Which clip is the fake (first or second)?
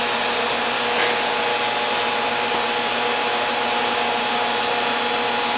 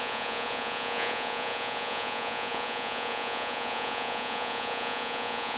second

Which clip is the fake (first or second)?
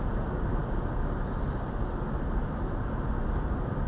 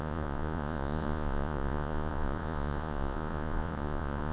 second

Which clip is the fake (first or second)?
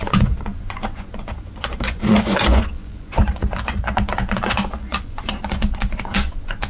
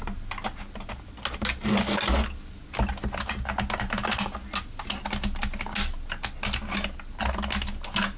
first